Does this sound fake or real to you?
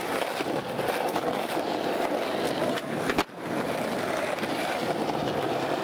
fake